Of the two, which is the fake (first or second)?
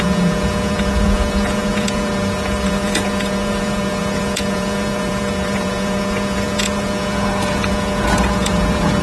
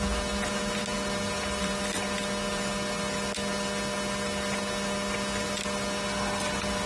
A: first